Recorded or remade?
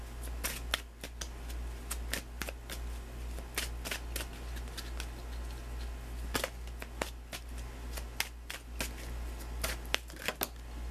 recorded